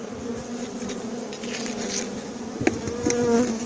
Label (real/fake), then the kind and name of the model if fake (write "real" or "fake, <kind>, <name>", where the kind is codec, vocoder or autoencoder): real